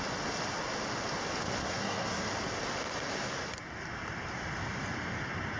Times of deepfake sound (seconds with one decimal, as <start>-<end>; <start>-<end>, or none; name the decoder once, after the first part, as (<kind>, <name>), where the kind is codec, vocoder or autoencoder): 1.6-2.3 (codec, SNAC)